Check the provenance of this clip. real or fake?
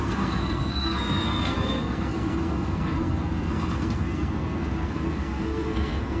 fake